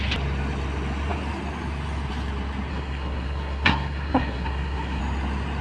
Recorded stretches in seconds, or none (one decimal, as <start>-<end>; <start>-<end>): 0.0-2.7; 5.0-5.6